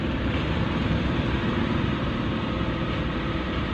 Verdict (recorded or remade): remade